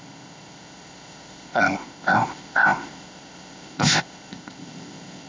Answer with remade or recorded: remade